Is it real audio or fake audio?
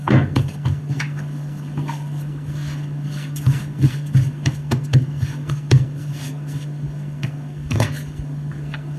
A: fake